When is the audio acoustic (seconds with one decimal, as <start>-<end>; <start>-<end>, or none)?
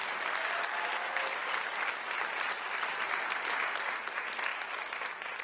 0.0-1.4; 2.3-4.5; 5.0-5.4